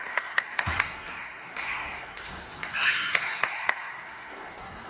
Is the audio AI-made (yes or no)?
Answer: yes